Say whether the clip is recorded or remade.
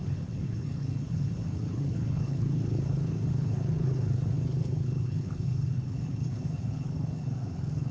remade